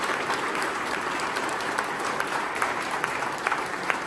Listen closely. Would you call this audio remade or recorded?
remade